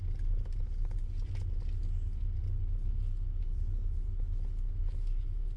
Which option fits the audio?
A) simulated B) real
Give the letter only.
B